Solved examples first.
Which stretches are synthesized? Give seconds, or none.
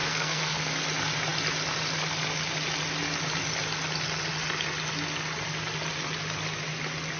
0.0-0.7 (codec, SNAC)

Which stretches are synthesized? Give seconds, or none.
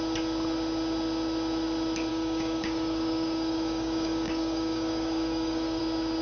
2.1-5.8 (codec, DAC)